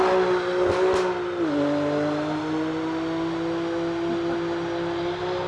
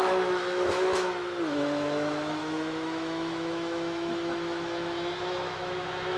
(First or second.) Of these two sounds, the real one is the first